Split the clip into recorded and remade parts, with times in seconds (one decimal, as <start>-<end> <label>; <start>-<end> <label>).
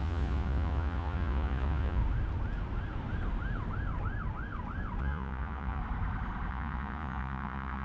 0.0-2.0 remade; 2.0-5.0 recorded; 5.0-5.8 remade; 5.8-6.5 recorded; 6.5-7.8 remade